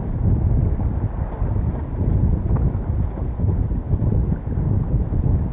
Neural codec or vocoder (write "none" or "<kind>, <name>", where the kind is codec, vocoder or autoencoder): none